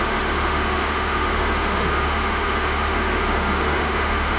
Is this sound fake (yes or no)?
yes